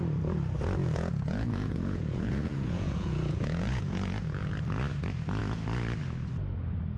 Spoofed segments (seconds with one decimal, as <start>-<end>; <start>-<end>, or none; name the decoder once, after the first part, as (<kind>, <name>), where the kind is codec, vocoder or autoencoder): 0.8-4.5 (vocoder, Vocos)